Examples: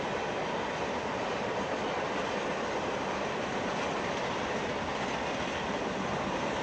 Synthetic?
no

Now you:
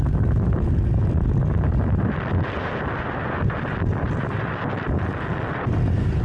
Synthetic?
no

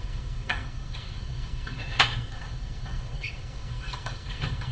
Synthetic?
yes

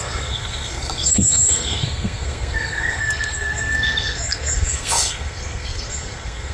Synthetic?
yes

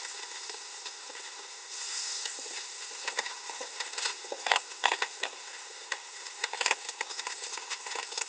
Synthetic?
yes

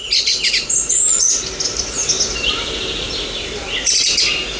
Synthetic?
no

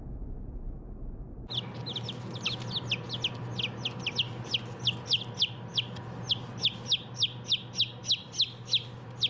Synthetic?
no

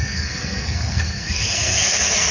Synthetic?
yes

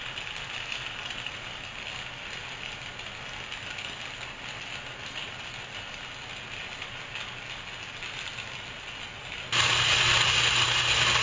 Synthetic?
no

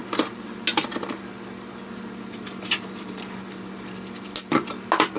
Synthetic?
no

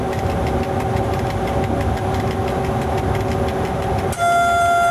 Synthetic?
no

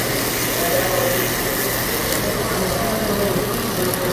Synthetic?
no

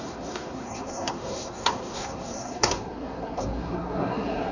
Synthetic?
yes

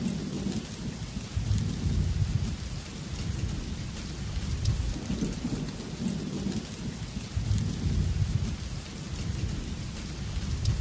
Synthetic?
no